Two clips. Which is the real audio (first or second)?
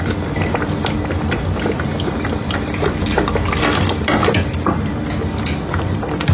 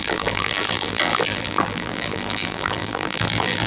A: first